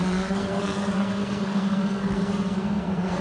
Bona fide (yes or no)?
no